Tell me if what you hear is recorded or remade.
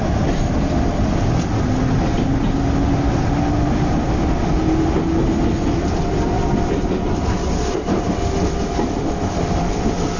recorded